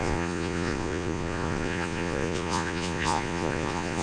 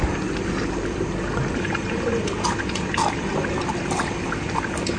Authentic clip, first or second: second